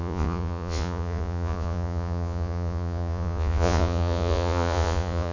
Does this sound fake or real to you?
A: fake